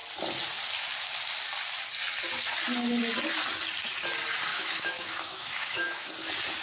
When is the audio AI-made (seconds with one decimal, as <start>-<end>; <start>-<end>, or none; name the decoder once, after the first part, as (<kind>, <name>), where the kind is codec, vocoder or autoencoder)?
4.5-6.1 (autoencoder, DAC-VAE)